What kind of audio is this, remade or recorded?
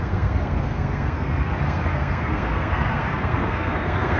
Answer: remade